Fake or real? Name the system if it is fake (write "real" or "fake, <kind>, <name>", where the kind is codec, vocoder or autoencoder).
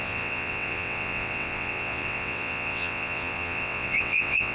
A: fake, vocoder, WaveNeXt